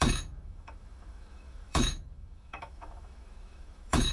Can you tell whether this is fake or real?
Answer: fake